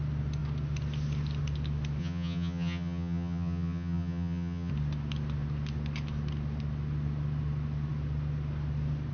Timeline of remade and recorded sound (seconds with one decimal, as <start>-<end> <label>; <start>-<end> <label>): 0.0-2.0 recorded; 2.0-4.7 remade; 4.7-9.1 recorded